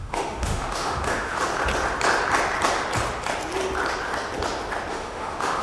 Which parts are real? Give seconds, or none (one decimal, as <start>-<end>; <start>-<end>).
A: 1.5-4.9